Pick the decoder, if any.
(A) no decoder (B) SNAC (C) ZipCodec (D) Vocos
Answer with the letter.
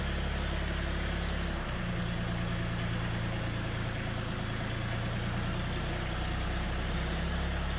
A